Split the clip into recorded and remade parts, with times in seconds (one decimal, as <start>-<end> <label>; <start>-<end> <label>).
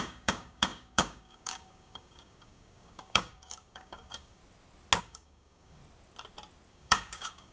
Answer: 0.0-4.4 remade; 4.4-5.0 recorded; 5.0-5.8 remade; 5.8-6.7 recorded; 6.7-7.5 remade